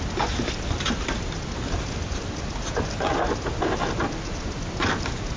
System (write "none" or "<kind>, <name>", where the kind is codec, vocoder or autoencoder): none